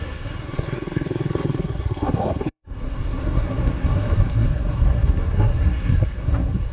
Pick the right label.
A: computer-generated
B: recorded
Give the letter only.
A